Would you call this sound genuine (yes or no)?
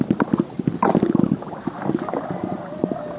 yes